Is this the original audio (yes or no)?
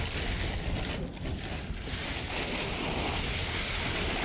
yes